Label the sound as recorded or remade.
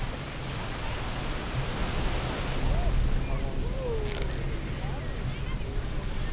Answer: recorded